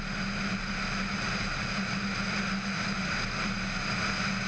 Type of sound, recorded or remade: recorded